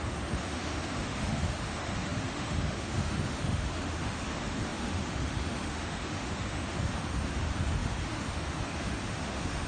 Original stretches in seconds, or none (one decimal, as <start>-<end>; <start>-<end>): none